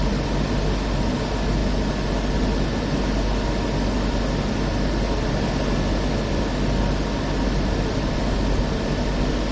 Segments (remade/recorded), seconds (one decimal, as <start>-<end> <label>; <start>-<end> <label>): 0.0-9.5 recorded